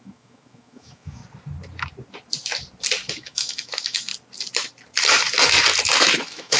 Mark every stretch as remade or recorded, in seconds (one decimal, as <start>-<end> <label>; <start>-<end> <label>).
0.0-1.2 remade; 1.2-3.1 recorded; 3.1-4.1 remade; 4.1-6.0 recorded; 6.0-6.6 remade